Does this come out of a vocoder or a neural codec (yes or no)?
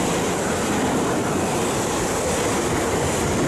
no